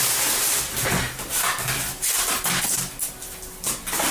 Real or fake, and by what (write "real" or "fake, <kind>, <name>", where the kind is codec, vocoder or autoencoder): real